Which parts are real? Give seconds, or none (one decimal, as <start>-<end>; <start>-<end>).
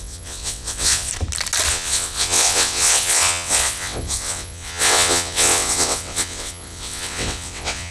1.1-1.7